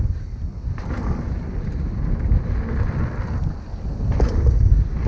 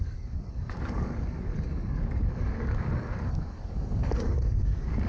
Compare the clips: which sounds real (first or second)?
first